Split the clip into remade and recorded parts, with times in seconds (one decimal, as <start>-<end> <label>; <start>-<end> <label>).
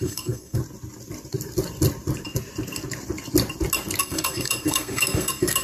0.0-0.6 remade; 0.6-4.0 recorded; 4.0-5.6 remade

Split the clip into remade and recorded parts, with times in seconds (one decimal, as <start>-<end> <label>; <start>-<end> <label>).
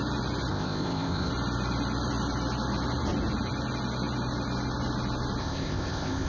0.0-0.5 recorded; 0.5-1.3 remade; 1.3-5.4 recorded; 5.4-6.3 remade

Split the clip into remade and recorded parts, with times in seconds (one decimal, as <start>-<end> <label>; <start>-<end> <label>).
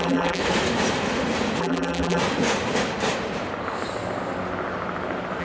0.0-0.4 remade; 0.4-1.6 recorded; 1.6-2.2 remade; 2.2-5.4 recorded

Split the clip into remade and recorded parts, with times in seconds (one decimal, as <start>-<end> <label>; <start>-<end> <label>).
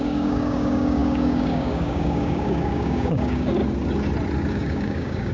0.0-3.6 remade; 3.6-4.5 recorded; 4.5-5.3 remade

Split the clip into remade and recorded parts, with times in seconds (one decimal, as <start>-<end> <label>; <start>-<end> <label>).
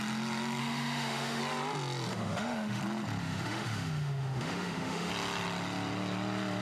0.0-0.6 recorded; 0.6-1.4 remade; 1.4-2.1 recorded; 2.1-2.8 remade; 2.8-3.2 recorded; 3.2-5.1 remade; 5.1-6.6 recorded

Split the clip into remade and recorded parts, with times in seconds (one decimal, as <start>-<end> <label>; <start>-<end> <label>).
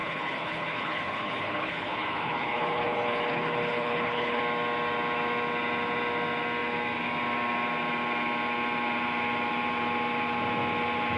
0.0-4.4 remade; 4.4-11.2 recorded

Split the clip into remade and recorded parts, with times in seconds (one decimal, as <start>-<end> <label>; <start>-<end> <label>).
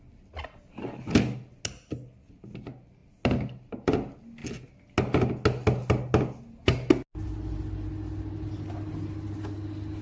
0.0-10.0 recorded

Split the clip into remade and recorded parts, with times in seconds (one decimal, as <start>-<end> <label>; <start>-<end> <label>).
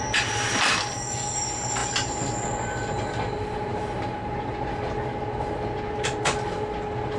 0.0-3.4 recorded; 3.4-4.5 remade; 4.5-7.2 recorded